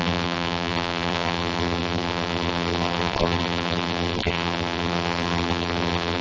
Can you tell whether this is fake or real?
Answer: fake